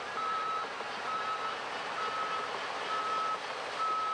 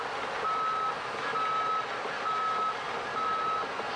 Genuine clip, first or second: second